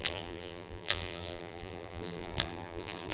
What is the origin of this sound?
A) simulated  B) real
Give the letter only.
A